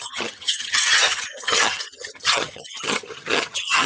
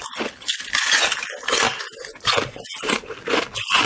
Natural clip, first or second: second